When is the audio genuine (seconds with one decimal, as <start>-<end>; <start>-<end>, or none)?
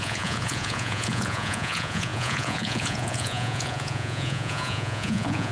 none